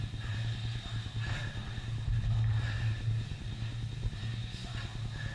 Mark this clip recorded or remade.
recorded